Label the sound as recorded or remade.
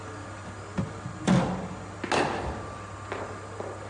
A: recorded